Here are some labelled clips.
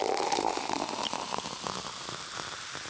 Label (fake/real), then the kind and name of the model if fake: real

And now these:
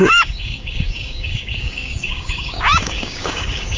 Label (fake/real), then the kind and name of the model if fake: fake, codec, DAC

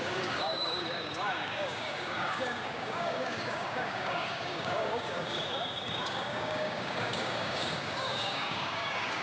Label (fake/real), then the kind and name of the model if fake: fake, codec, DAC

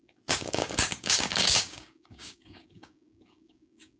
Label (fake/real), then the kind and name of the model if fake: fake, codec, DAC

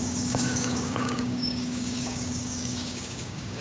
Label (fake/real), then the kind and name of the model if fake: fake, codec, DAC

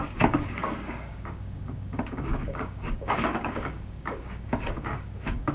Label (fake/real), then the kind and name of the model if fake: fake, codec, DAC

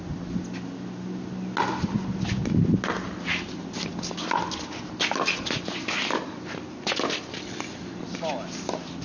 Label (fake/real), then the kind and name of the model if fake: real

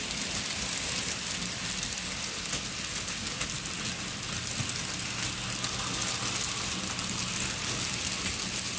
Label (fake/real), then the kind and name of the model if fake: real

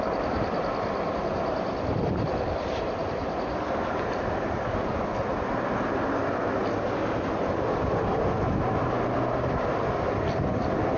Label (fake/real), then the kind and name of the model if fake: real